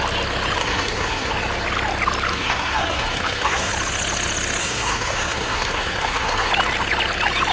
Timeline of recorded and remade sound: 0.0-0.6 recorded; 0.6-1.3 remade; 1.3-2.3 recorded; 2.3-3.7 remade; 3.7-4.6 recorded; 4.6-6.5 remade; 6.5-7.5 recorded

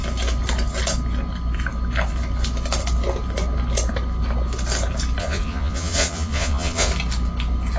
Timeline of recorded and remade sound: 0.0-5.2 recorded; 5.2-6.9 remade; 6.9-7.8 recorded

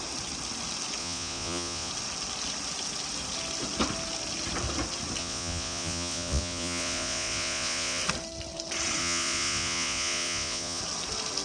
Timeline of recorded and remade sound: 0.0-1.0 recorded; 1.0-1.9 remade; 1.9-5.2 recorded; 5.2-8.0 remade; 8.0-9.0 recorded; 9.0-10.8 remade; 10.8-11.4 recorded